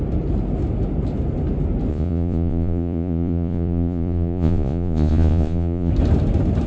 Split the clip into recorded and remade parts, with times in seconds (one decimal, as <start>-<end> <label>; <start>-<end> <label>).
0.0-1.9 recorded; 1.9-5.9 remade; 5.9-6.7 recorded